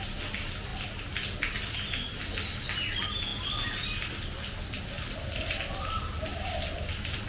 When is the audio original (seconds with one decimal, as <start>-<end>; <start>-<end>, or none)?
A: 0.0-7.3